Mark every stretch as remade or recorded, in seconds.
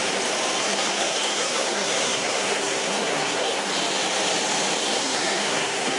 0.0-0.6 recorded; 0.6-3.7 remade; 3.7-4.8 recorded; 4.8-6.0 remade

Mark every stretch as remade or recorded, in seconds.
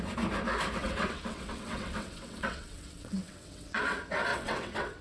0.0-0.8 recorded; 0.8-3.8 remade; 3.8-4.3 recorded; 4.3-5.0 remade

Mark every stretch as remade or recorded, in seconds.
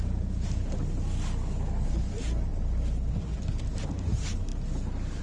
0.0-5.2 recorded